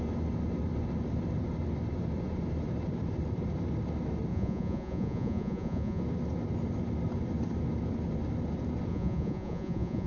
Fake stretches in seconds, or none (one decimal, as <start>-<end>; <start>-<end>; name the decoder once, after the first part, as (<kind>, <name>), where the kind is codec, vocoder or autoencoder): 4.3-6.0 (vocoder, Vocos); 8.9-10.1